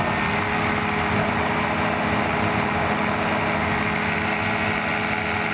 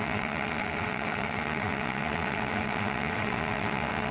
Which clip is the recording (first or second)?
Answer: first